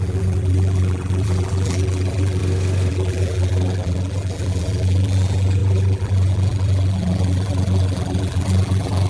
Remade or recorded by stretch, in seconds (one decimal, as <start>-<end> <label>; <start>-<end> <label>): 0.0-2.4 remade; 2.4-2.9 recorded; 2.9-9.1 remade